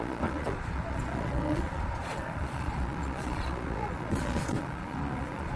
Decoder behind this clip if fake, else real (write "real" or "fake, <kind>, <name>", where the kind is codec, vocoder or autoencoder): fake, vocoder, Vocos